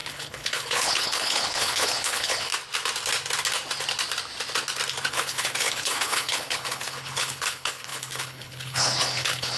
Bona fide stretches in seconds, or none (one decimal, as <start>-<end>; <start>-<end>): 2.5-5.1